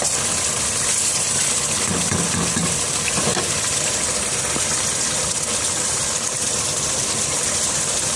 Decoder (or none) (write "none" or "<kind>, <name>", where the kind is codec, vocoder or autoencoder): none